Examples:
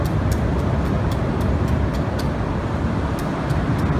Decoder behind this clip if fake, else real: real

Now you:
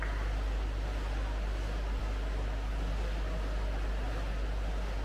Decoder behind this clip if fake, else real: real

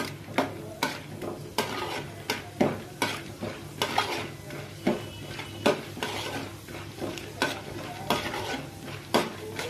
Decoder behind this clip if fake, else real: real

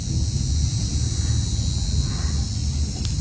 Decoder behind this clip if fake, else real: real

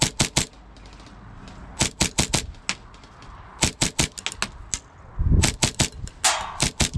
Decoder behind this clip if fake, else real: real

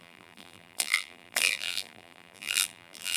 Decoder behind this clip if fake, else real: fake, vocoder, BigVGAN v2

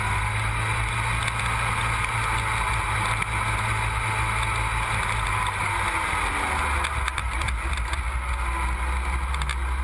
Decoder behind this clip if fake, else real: real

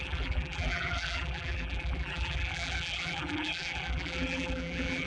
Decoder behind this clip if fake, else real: fake, vocoder, BigVGAN v2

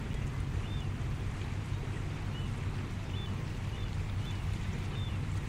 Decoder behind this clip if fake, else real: real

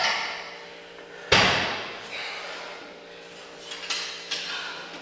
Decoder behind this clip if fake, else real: real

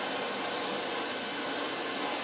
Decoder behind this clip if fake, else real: fake, vocoder, BigVGAN v2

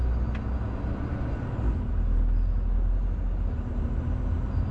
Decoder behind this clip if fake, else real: real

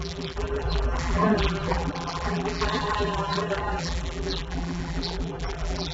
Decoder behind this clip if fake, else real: fake, vocoder, BigVGAN v2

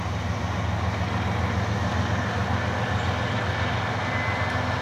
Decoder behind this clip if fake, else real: real